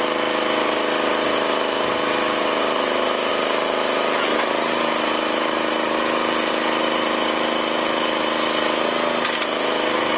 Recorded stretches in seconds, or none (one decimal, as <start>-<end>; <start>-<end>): 0.0-10.2